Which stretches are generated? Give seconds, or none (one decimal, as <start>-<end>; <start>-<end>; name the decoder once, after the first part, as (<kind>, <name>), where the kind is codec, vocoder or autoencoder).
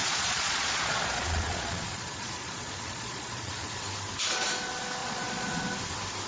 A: 0.0-3.8 (vocoder, Vocos); 5.0-5.6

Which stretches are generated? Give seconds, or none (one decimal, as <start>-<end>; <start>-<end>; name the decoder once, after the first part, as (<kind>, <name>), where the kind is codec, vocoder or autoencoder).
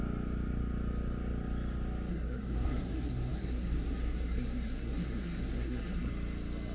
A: 2.1-6.1 (codec, SNAC)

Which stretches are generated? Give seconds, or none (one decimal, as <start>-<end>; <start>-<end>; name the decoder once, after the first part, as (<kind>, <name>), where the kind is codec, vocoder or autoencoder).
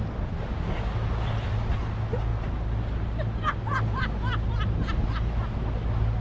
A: none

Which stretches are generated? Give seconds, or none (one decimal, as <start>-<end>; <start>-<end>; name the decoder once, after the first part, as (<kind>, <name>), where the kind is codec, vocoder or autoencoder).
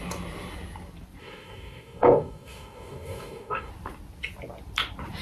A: 1.2-3.7 (codec, DAC)